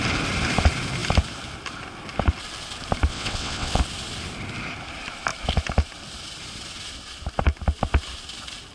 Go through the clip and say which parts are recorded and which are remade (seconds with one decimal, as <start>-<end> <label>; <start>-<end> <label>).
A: 0.0-3.1 recorded; 3.1-3.8 remade; 3.8-8.7 recorded